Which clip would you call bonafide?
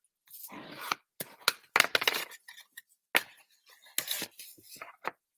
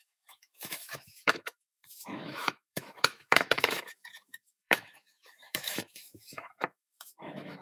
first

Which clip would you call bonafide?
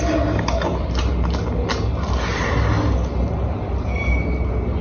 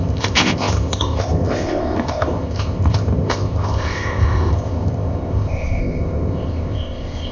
first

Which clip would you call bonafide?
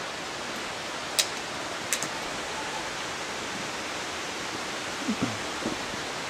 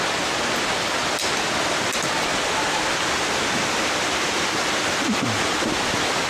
first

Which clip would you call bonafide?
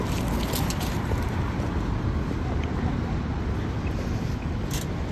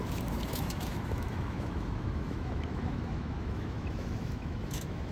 first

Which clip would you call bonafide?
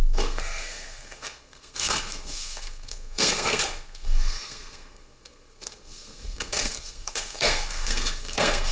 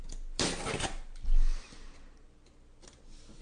second